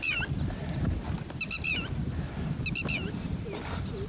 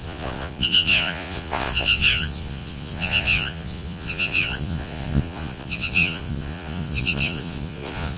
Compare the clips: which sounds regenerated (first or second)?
second